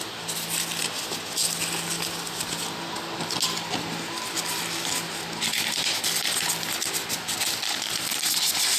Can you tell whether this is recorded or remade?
recorded